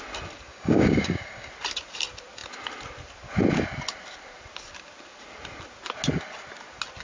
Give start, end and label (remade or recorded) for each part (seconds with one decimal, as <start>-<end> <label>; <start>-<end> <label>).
0.0-0.5 recorded; 0.5-1.5 remade; 1.5-7.0 recorded

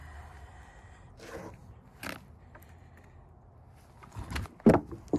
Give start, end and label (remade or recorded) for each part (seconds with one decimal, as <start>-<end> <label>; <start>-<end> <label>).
0.0-1.1 remade; 1.1-5.2 recorded